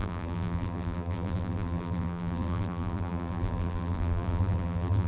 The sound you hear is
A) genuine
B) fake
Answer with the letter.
B